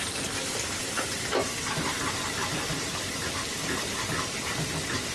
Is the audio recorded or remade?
recorded